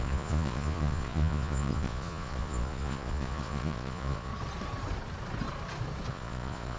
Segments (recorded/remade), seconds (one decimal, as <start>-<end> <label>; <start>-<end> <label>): 0.0-4.3 remade; 4.3-6.1 recorded; 6.1-6.8 remade